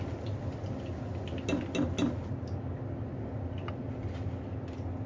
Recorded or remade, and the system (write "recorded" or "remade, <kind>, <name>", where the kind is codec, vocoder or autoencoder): recorded